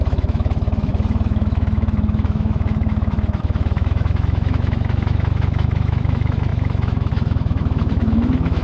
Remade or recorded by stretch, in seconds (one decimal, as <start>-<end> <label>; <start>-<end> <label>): 0.0-8.6 remade